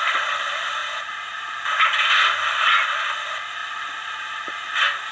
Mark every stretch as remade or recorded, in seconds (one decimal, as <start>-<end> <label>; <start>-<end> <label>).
0.0-5.1 recorded